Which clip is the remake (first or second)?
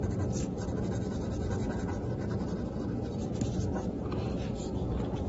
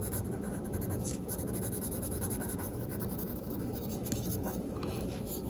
second